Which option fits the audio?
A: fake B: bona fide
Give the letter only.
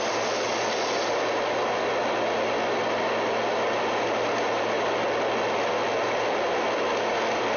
B